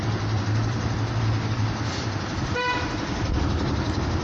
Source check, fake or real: fake